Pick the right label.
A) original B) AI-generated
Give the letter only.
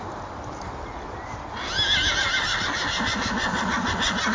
A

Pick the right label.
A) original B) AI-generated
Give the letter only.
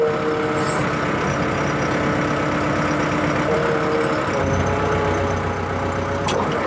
A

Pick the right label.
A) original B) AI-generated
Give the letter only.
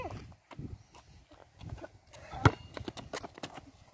A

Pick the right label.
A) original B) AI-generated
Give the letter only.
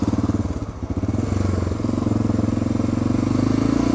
A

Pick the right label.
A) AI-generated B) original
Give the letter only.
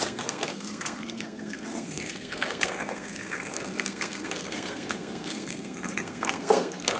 A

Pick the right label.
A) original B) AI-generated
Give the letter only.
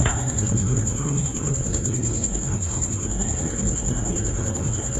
B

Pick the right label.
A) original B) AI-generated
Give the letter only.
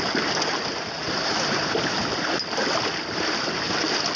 A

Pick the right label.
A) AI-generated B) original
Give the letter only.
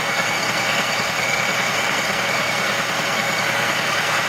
A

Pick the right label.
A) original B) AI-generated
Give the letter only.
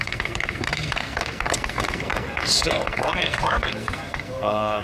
B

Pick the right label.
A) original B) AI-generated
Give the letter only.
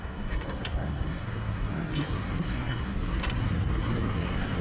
B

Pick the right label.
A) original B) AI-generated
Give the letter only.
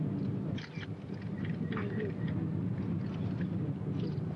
A